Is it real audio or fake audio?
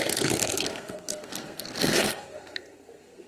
fake